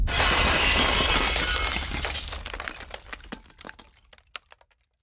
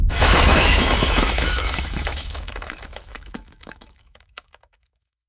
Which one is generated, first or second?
second